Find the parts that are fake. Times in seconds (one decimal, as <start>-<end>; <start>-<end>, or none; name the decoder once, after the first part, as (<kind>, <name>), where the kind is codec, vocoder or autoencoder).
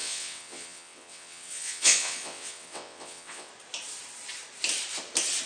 0.0-3.5 (vocoder, WaveNeXt)